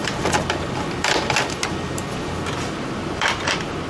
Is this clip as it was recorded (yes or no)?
yes